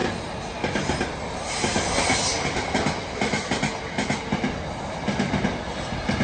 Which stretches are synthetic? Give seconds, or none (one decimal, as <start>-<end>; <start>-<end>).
none